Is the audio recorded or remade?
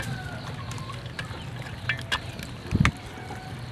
recorded